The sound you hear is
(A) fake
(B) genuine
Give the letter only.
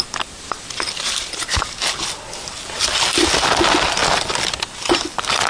B